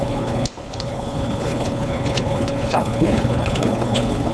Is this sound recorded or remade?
remade